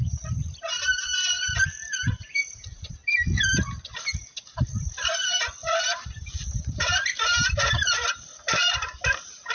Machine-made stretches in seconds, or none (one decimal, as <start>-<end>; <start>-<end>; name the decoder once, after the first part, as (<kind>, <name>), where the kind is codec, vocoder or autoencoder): 0.0-3.0 (vocoder, BigVGAN v2); 3.9-9.5